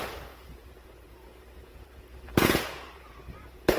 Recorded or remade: remade